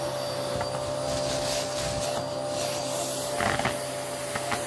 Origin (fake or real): real